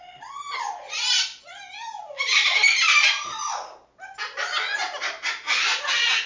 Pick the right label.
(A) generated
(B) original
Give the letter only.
B